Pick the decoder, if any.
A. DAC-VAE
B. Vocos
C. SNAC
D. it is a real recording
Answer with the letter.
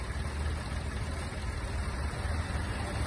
D